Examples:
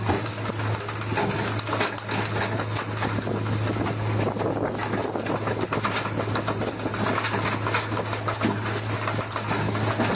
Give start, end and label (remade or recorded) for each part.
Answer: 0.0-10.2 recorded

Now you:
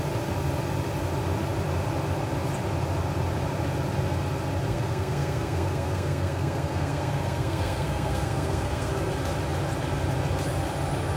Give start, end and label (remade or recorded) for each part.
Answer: 0.0-4.7 recorded; 4.7-8.9 remade; 8.9-11.2 recorded

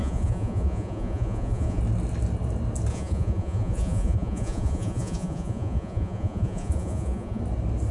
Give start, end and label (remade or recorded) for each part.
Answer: 0.0-1.8 remade; 1.8-2.9 recorded; 2.9-7.4 remade; 7.4-7.9 recorded

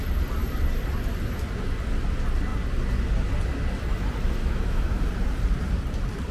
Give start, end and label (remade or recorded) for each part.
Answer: 0.0-4.4 recorded; 4.4-5.1 remade; 5.1-6.3 recorded

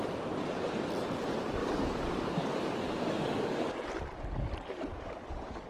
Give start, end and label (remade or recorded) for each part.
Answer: 0.0-1.6 recorded; 1.6-3.9 remade; 3.9-4.9 recorded; 4.9-5.7 remade